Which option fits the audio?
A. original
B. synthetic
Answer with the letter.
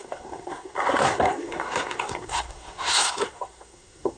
B